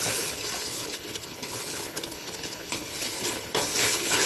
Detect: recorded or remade remade